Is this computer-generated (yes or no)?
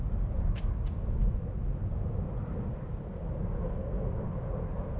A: no